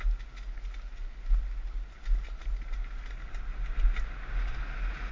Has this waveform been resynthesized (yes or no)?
no